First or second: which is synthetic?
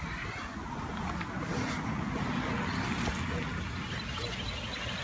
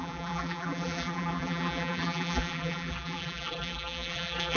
second